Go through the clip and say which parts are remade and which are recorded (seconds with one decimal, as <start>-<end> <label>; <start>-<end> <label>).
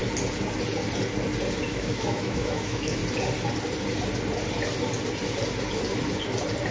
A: 0.0-1.7 recorded; 1.7-3.0 remade; 3.0-6.7 recorded